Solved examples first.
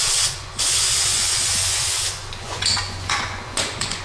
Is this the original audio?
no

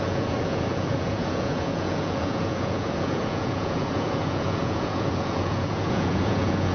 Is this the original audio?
no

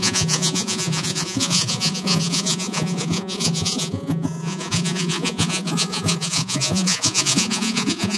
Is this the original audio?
no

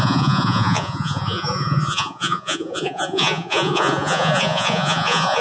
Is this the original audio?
no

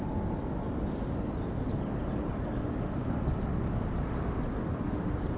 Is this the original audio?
yes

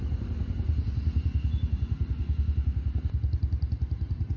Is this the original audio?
yes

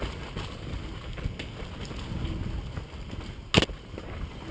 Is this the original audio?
yes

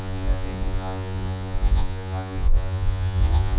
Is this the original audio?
no